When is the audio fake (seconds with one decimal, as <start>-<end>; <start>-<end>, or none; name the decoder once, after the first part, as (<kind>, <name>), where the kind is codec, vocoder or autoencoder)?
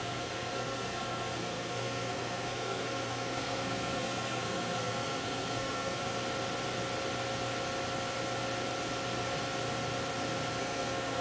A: 0.0-6.0 (codec, SNAC); 10.6-11.2